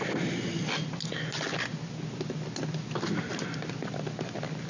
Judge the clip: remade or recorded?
recorded